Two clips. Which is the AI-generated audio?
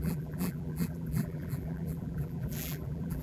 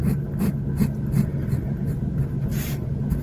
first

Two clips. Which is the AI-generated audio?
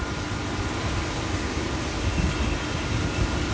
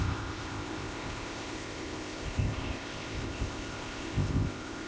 second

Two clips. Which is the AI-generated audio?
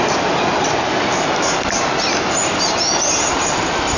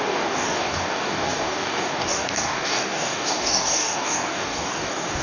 second